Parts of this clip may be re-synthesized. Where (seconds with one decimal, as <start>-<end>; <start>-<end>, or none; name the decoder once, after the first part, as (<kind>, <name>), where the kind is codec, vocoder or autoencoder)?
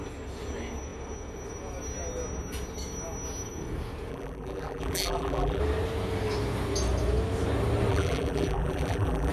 4.1-5.6 (vocoder, BigVGAN v2); 7.9-9.3